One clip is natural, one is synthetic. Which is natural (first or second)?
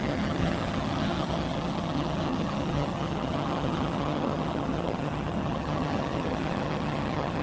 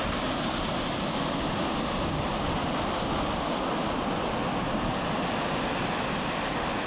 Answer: second